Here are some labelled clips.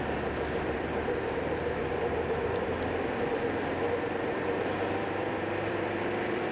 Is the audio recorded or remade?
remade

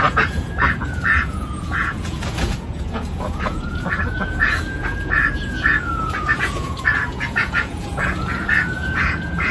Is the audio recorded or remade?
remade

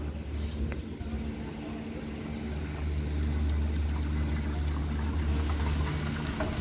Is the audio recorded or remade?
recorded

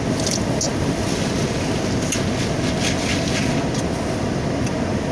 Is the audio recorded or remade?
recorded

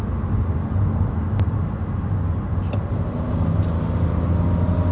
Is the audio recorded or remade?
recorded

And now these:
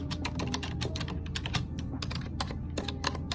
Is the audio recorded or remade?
recorded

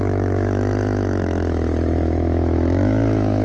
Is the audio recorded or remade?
remade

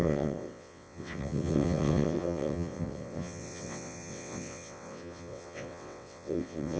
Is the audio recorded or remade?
remade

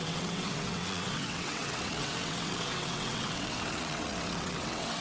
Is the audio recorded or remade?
remade